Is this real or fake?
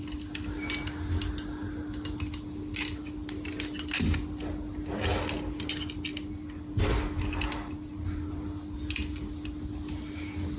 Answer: real